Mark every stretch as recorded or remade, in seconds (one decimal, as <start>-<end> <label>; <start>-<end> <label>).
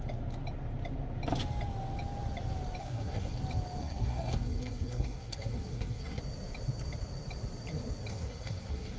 0.0-2.8 recorded; 2.8-3.4 remade; 3.4-3.8 recorded; 3.8-6.2 remade; 6.2-8.1 recorded; 8.1-9.0 remade